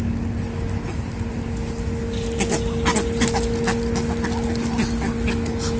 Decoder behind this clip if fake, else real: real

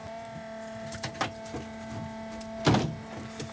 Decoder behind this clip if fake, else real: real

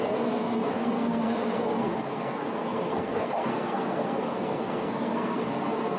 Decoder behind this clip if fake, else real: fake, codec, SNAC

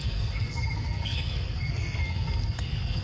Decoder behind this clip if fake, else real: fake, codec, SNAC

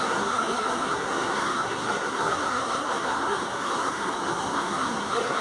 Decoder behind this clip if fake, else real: fake, codec, SNAC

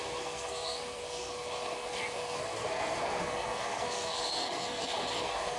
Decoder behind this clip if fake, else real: fake, codec, SNAC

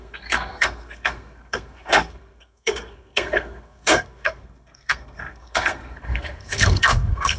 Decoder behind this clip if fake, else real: fake, codec, SNAC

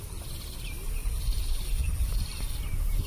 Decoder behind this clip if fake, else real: real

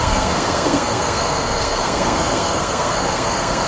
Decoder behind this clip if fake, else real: fake, codec, SNAC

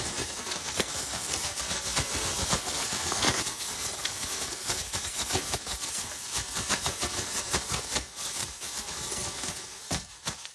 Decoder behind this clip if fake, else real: fake, codec, SNAC